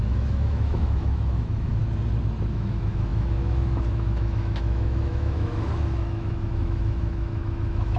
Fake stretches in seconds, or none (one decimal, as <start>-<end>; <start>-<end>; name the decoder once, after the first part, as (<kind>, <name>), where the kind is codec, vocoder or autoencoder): 0.0-1.8 (autoencoder, DAC-VAE); 2.5-8.0